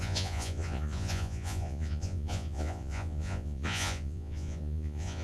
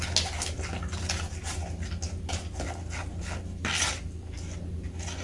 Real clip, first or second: second